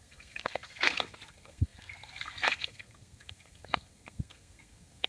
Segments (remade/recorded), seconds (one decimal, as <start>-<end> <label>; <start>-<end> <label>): 0.0-5.1 remade